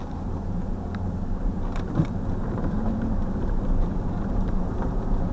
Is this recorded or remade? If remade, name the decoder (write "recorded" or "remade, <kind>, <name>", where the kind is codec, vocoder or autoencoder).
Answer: remade, vocoder, BigVGAN v2